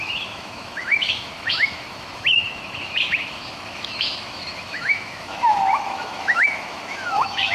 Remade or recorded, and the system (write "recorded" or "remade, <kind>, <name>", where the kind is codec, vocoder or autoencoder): remade, autoencoder, DAC-VAE